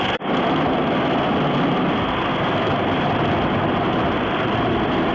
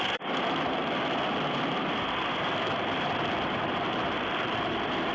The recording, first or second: first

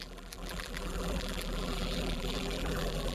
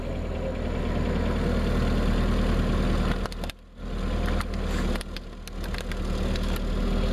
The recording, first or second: second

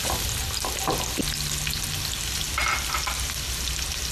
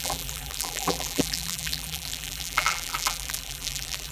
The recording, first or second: first